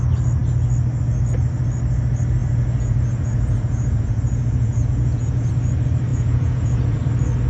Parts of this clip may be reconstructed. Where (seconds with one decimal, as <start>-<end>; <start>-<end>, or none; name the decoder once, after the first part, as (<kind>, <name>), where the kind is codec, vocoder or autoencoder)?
2.4-5.5 (vocoder, Vocos); 6.1-7.0